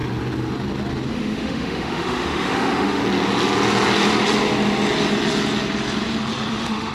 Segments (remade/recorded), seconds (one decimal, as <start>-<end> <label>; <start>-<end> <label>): 0.0-1.1 recorded; 1.1-3.0 remade; 3.0-6.5 recorded; 6.5-6.9 remade